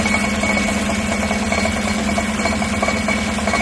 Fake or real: real